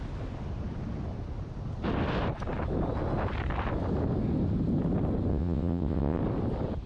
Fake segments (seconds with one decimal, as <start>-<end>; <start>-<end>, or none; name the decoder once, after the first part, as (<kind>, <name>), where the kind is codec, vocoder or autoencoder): 5.3-6.2 (vocoder, WaveNeXt)